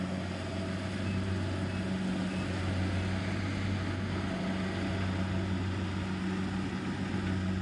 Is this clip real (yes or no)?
yes